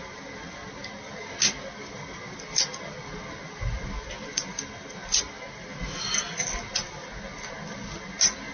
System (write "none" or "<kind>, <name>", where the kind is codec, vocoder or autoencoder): none